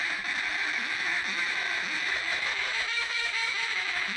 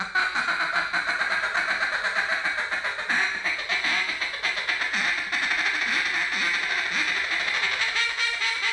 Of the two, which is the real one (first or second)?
second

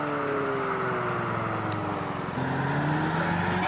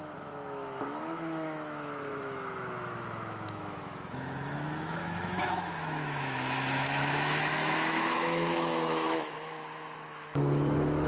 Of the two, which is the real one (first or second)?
first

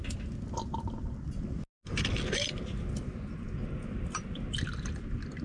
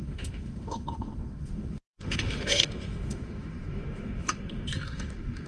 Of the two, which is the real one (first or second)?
first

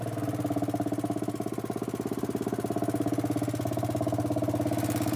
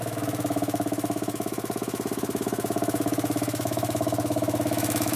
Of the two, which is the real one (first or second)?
first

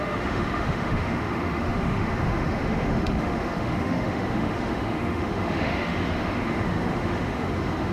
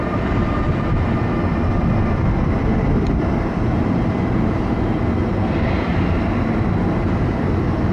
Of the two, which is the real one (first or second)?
second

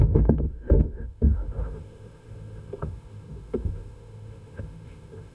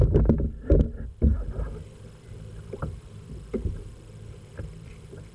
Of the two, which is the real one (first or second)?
second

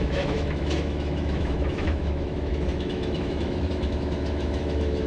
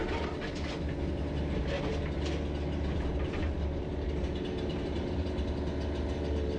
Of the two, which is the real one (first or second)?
second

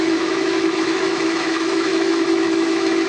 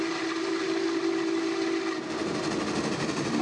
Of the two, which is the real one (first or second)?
second